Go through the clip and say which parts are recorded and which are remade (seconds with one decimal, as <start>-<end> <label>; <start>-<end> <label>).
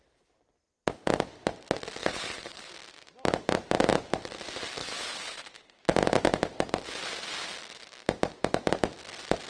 0.0-2.0 recorded; 2.0-2.7 remade; 2.7-4.8 recorded; 4.8-5.8 remade; 5.8-9.5 recorded